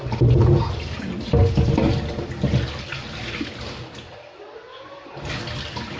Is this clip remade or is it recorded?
recorded